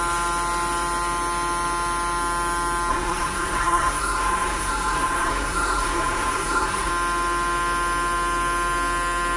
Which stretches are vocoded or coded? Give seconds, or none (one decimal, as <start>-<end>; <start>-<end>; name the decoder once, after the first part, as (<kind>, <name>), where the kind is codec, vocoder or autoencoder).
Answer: 2.9-6.9 (codec, SNAC)